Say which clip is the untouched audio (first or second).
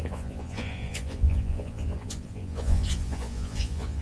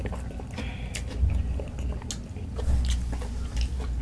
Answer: second